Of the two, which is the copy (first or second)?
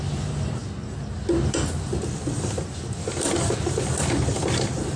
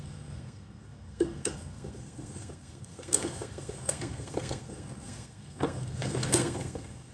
second